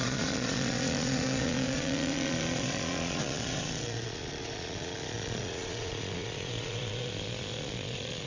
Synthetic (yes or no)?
yes